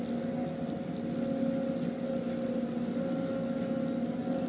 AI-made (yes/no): no